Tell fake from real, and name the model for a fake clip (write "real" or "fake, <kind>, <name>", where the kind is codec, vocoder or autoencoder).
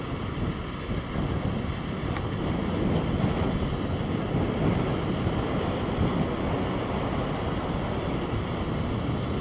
real